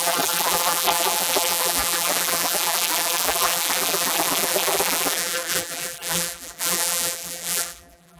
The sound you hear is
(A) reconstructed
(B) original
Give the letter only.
A